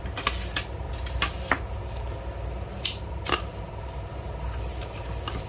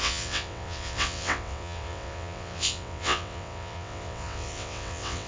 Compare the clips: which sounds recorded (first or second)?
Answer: first